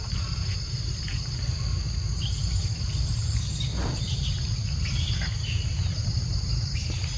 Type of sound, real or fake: real